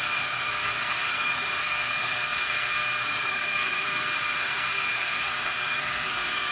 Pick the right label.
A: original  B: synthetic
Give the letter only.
B